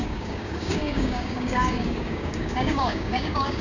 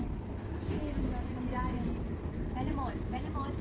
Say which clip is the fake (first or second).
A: first